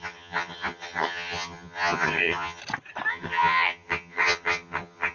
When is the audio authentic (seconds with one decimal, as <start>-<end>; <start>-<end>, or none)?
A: 2.6-3.1